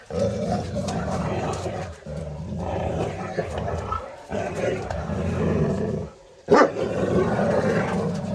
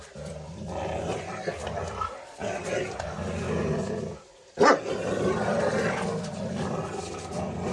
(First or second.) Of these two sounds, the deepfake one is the first